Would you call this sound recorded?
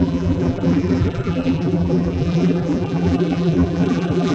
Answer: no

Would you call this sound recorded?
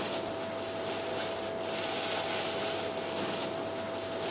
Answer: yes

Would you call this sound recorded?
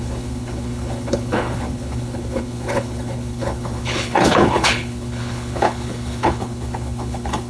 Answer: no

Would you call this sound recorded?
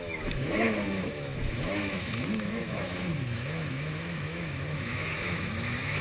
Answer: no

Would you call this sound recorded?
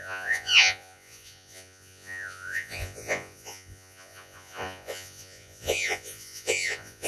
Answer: no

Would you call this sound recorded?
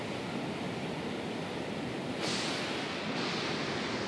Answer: yes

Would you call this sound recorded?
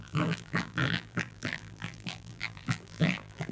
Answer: no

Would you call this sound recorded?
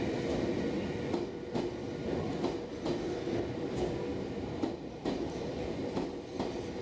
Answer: yes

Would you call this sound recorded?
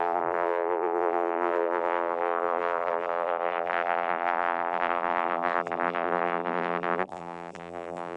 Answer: no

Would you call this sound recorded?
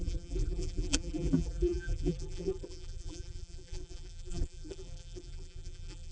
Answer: no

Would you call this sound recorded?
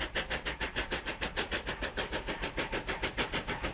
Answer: no